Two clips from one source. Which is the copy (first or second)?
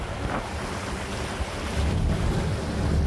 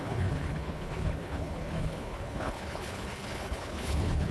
second